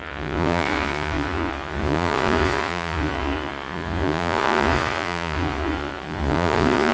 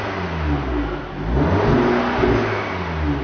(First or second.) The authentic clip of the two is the second